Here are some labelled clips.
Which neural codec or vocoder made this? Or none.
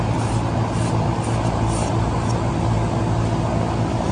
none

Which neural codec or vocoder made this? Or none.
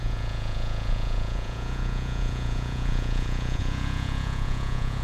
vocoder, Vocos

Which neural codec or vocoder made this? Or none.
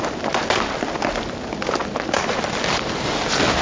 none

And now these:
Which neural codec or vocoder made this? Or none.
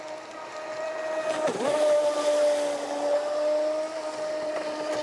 none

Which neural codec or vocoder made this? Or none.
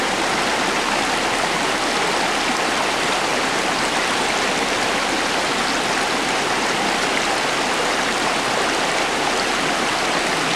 none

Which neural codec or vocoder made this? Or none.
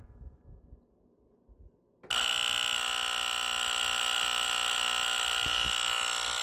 none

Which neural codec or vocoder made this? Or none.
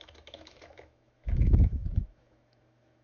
autoencoder, DAC-VAE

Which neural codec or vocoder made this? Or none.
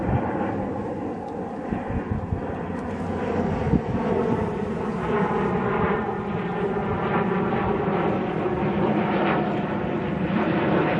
none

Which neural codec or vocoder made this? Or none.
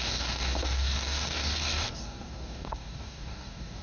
codec, DAC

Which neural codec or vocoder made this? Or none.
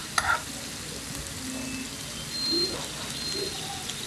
none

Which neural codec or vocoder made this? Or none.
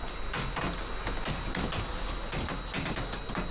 none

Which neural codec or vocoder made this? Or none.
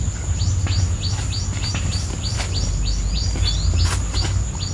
none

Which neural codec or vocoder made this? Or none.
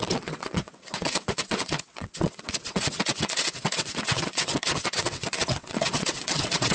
vocoder, WaveNeXt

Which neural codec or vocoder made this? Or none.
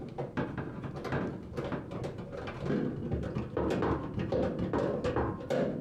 none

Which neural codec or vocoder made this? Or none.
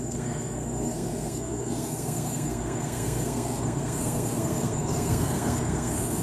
codec, SNAC